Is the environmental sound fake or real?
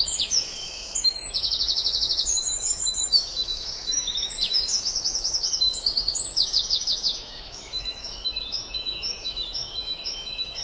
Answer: fake